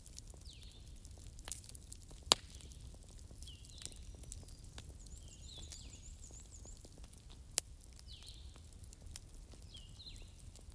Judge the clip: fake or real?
real